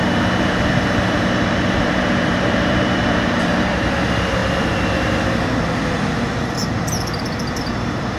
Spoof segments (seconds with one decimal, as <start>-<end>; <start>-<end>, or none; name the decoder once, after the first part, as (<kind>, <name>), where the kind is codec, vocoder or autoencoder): 0.7-4.4 (vocoder, BigVGAN v2)